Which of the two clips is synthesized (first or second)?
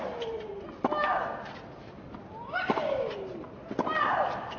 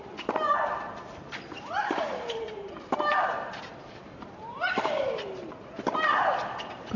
second